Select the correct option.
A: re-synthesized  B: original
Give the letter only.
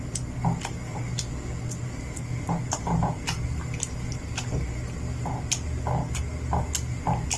B